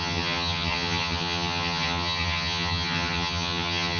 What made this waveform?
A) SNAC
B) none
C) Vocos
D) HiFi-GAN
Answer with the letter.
D